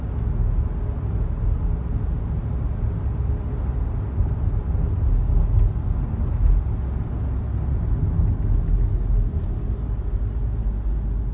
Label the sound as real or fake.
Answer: real